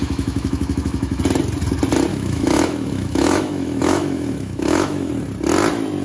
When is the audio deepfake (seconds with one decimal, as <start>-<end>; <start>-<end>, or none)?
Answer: 0.0-1.2; 2.1-5.1